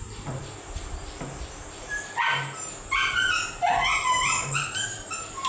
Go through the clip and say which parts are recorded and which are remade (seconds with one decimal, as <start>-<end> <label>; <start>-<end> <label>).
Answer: 0.0-0.4 remade; 0.4-3.7 recorded; 3.7-5.5 remade